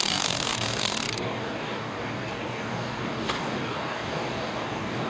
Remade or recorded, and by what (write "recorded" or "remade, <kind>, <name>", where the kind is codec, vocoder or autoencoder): remade, codec, DAC